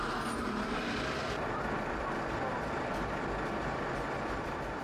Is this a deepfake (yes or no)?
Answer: no